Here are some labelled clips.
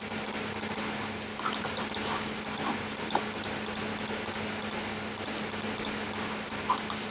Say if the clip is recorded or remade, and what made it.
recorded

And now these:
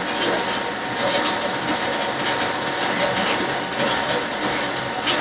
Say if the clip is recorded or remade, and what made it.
recorded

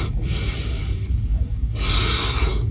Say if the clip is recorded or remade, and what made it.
remade, codec, DAC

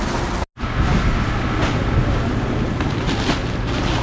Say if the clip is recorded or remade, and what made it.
recorded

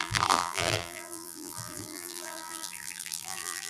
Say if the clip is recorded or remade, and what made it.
remade, vocoder, BigVGAN v2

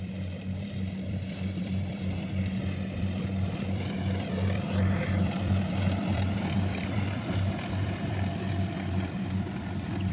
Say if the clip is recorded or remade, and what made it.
remade, vocoder, BigVGAN v2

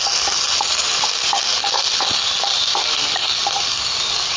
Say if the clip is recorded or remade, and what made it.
recorded